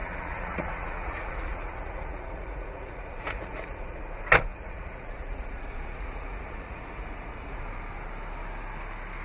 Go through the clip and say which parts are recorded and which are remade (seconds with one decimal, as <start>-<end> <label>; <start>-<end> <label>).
0.0-4.0 remade; 4.0-4.5 recorded; 4.5-7.6 remade; 7.6-9.2 recorded